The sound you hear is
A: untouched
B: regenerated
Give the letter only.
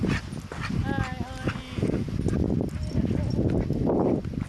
A